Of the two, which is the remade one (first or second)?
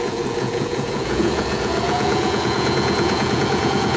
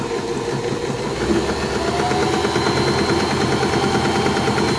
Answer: first